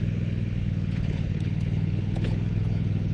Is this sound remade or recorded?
remade